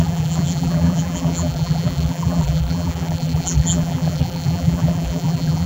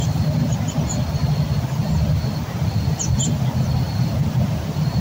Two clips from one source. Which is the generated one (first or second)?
first